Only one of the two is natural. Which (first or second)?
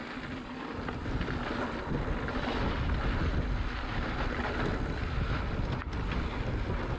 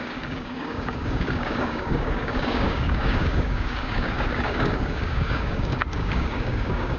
first